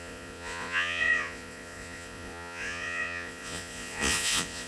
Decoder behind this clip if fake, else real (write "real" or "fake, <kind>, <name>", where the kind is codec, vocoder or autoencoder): fake, vocoder, Vocos